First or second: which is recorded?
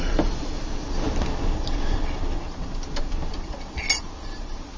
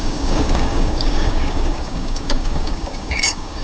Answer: first